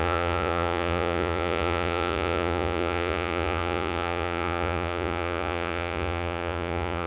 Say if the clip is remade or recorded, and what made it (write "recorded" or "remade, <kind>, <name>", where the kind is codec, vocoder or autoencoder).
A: remade, vocoder, Vocos